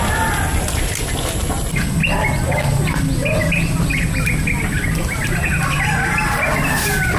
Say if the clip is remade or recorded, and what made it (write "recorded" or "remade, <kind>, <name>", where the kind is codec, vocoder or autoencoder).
recorded